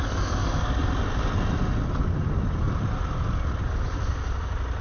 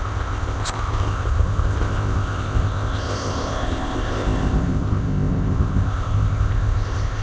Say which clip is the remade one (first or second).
second